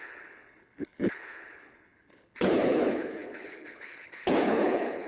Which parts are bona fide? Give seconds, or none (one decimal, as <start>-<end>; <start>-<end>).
none